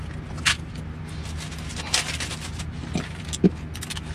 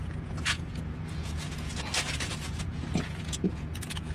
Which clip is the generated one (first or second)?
second